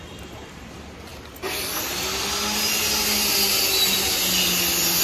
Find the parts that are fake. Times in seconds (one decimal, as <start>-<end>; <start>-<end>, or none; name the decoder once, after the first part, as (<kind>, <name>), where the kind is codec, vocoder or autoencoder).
none